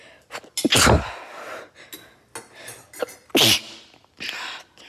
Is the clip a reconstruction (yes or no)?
no